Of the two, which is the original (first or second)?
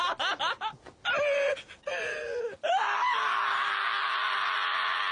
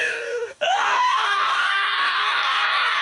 first